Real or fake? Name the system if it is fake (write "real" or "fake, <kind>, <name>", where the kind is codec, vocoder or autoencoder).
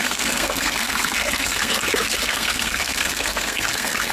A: fake, codec, SNAC